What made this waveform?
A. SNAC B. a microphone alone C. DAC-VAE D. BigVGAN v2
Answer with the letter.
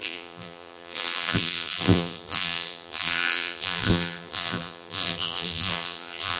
D